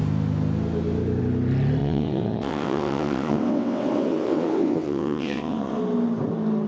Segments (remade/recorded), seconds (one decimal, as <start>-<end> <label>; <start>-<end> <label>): 0.0-1.8 recorded; 1.8-5.8 remade; 5.8-6.7 recorded